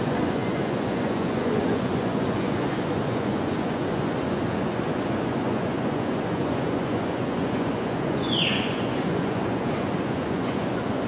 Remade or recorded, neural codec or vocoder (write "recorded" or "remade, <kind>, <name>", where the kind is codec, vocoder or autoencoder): remade, vocoder, Vocos